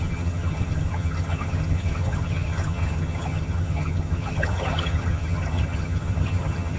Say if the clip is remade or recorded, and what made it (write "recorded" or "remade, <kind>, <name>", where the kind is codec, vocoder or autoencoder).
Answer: remade, vocoder, HiFi-GAN